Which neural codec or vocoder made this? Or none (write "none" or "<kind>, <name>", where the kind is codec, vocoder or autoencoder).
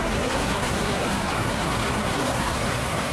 codec, SNAC